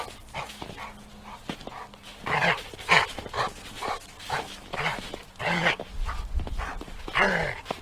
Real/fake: real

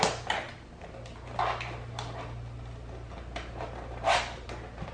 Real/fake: real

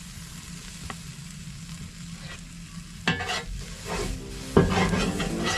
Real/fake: real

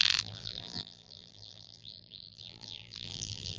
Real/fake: fake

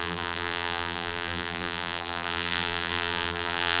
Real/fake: fake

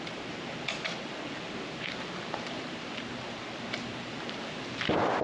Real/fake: fake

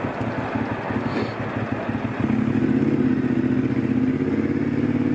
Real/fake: real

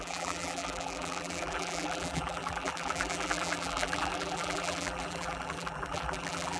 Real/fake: fake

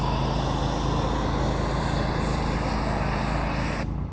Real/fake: real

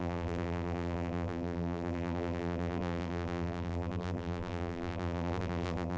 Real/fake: fake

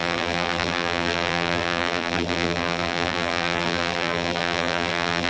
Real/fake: fake